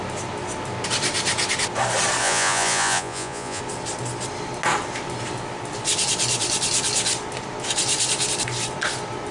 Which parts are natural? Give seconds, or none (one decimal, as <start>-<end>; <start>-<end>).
0.0-2.2; 3.6-9.3

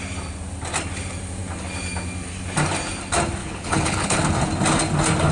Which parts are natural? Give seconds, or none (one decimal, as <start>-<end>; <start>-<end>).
0.0-3.4; 4.2-5.3

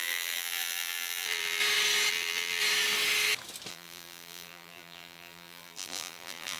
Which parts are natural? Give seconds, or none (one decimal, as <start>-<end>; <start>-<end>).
1.6-2.1; 2.6-3.7

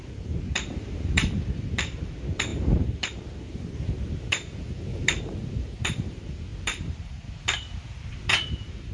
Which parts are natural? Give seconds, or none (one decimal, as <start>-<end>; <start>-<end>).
none